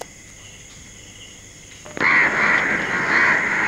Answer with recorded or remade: recorded